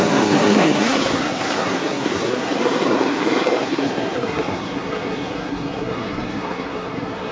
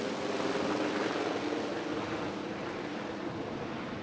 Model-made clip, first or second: first